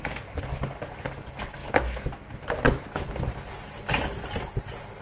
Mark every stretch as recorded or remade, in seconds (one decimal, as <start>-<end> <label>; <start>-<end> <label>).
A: 0.0-5.0 recorded